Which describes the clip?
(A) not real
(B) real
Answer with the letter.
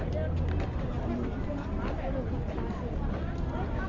B